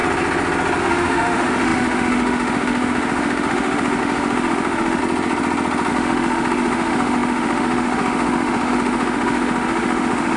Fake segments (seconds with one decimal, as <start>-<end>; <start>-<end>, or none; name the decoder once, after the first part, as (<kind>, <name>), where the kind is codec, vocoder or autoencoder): 0.8-5.0 (autoencoder, DAC-VAE); 5.9-10.4